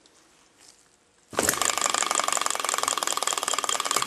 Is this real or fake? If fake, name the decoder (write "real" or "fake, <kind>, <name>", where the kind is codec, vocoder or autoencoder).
real